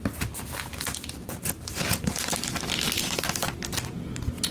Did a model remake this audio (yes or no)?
no